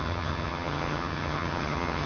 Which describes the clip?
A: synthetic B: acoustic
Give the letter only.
A